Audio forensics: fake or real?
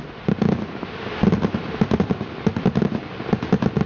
real